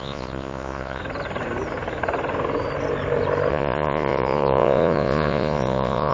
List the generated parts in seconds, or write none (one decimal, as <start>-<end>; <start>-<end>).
0.0-1.0; 3.5-6.1